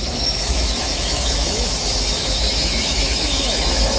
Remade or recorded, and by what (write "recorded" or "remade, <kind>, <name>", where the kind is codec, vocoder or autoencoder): remade, autoencoder, DAC-VAE